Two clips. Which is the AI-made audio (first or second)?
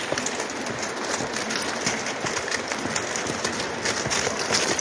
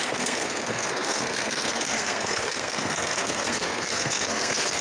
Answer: second